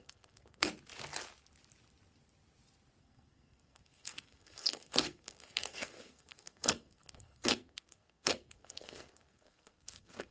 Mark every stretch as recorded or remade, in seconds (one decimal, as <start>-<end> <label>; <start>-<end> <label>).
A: 0.0-0.7 remade; 0.7-3.0 recorded; 3.0-10.3 remade